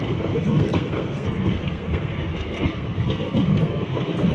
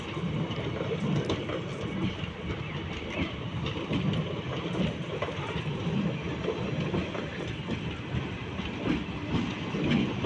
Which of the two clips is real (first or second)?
second